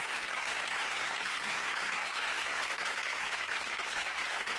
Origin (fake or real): fake